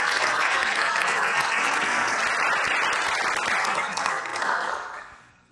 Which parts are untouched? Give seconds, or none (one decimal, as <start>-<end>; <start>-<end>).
2.2-3.6